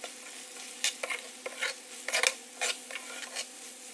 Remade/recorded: recorded